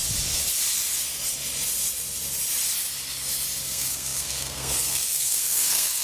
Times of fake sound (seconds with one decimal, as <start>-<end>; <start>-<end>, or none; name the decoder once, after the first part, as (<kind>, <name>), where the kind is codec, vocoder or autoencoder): 3.6-6.0 (codec, SNAC)